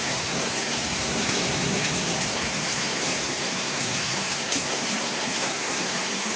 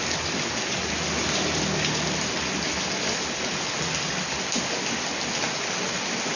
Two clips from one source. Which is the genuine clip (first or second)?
second